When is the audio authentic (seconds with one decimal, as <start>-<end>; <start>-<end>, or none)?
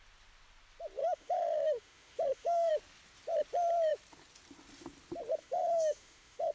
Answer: 0.0-1.0; 2.7-5.4